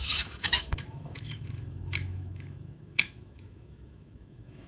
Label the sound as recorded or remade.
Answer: remade